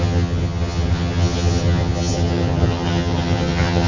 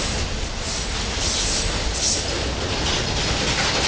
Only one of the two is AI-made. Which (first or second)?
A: first